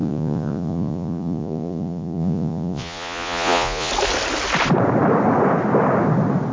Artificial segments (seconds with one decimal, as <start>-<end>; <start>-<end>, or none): 0.0-3.9